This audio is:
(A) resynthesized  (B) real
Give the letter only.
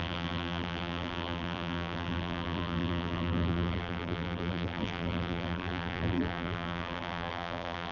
A